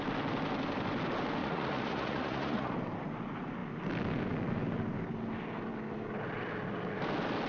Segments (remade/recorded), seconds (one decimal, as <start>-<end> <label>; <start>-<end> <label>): 0.0-1.4 recorded; 1.4-2.7 remade; 2.7-7.5 recorded